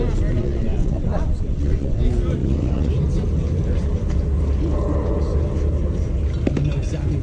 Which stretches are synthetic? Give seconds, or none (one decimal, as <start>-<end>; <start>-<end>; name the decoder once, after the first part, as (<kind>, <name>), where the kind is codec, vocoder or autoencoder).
0.4-2.0 (vocoder, WaveNeXt); 2.4-2.9